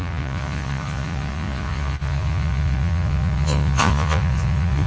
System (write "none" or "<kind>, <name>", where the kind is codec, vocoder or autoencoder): vocoder, Vocos